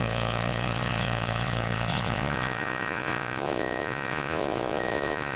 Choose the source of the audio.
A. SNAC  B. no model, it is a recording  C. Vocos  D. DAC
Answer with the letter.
C